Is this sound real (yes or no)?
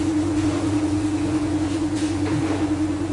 no